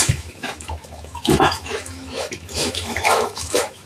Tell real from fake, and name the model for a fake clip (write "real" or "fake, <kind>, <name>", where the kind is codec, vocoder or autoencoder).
fake, autoencoder, DAC-VAE